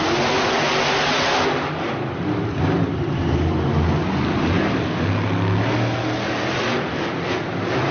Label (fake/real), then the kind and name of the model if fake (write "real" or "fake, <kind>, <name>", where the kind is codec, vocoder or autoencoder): real